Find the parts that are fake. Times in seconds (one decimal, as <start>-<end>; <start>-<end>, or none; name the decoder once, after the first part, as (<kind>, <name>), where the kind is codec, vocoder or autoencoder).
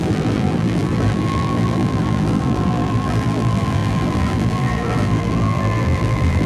0.0-6.5 (vocoder, BigVGAN v2)